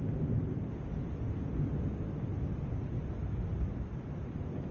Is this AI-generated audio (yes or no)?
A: no